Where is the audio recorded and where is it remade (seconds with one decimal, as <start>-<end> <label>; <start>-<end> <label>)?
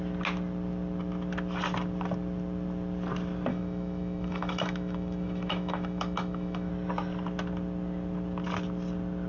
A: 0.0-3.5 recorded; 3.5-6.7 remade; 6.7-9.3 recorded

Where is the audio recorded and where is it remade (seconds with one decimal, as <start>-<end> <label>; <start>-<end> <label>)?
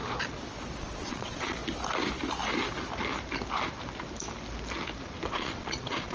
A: 0.0-0.8 recorded; 0.8-1.6 remade; 1.6-5.3 recorded; 5.3-6.1 remade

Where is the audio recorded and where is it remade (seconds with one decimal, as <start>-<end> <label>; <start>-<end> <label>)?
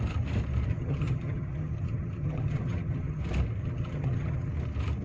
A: 0.0-0.7 recorded; 0.7-3.2 remade; 3.2-3.6 recorded; 3.6-4.5 remade; 4.5-5.0 recorded